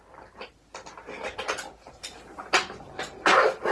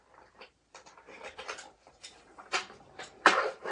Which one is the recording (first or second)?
first